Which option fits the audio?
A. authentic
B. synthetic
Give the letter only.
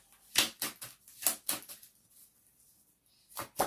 A